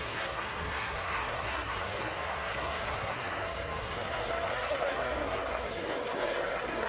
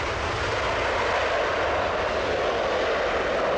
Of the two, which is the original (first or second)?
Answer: second